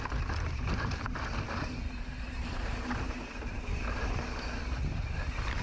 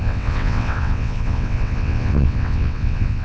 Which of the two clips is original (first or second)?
first